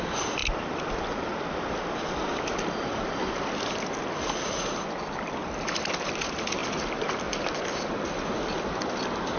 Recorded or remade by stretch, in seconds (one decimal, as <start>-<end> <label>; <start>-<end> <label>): 0.0-9.4 recorded